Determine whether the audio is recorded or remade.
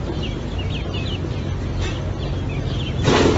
recorded